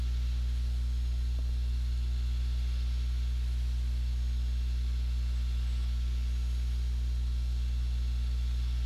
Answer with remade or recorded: recorded